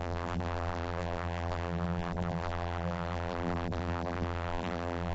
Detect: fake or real fake